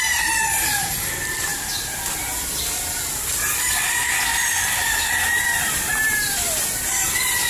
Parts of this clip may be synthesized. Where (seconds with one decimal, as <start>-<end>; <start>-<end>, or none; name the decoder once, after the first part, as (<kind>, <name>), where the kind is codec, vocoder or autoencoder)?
0.0-7.5 (vocoder, BigVGAN v2)